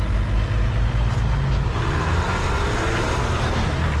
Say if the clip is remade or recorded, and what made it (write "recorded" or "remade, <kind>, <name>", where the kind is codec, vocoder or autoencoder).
recorded